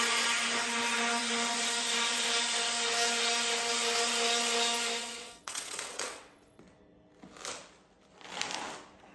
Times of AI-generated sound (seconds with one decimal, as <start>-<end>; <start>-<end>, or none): 5.0-6.6